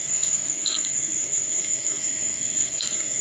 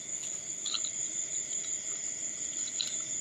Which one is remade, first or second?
first